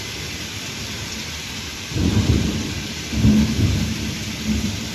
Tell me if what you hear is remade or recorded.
remade